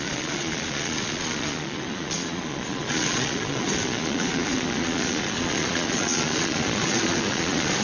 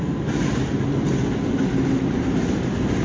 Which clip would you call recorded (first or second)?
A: second